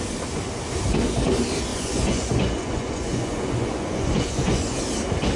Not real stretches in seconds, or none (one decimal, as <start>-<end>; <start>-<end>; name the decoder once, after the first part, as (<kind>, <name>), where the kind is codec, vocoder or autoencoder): 1.7-4.8 (vocoder, Vocos)